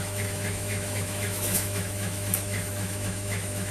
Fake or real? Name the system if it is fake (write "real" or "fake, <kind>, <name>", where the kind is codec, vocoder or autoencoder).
fake, autoencoder, DAC-VAE